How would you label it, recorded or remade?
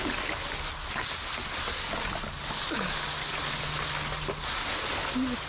recorded